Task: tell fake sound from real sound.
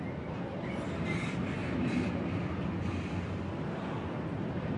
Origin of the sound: real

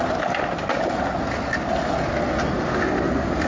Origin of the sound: real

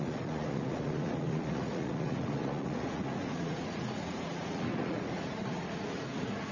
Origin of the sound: fake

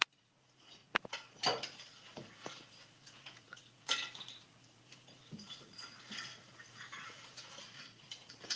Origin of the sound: fake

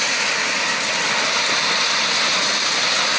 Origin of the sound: real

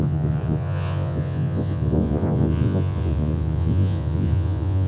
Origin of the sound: fake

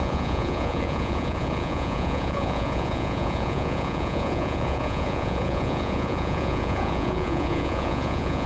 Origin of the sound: fake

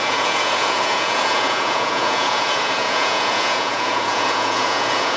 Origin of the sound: fake